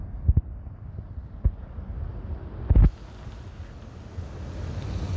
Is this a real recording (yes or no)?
yes